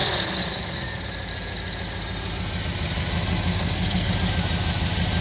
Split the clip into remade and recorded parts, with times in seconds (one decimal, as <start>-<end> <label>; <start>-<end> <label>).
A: 0.0-3.5 recorded; 3.5-4.1 remade; 4.1-5.2 recorded